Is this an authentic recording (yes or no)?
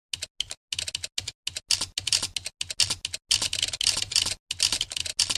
yes